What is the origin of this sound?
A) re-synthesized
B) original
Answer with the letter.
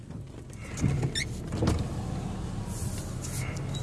B